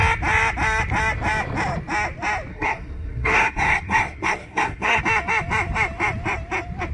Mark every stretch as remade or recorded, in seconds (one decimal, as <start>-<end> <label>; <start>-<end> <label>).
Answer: 0.0-2.5 recorded; 2.5-5.0 remade; 5.0-6.9 recorded